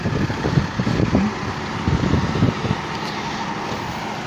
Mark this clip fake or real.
real